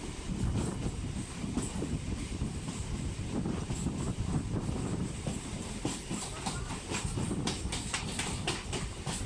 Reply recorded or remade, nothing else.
remade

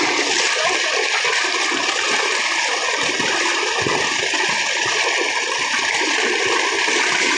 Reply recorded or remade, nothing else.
recorded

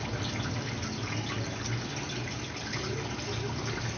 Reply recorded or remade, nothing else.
recorded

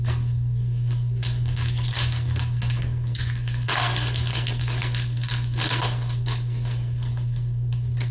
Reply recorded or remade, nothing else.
remade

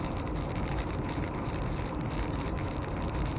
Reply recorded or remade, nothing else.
remade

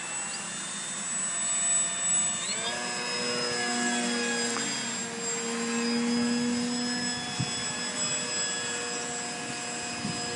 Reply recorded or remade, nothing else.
recorded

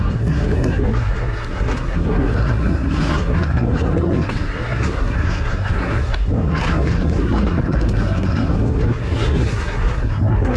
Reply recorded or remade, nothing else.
remade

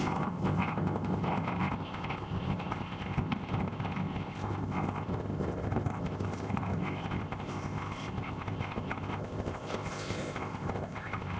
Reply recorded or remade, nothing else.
remade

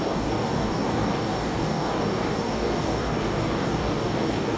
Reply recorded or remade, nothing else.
remade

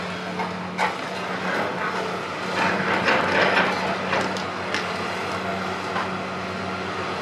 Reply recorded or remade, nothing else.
recorded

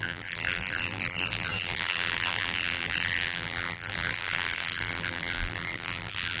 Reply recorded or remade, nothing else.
remade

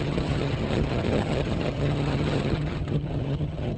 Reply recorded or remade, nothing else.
remade